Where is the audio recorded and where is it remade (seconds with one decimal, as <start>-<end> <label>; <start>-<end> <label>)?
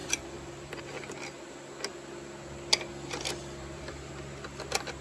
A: 0.0-0.8 remade; 0.8-2.9 recorded; 2.9-4.1 remade; 4.1-5.0 recorded